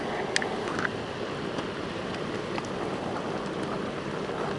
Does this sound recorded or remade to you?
recorded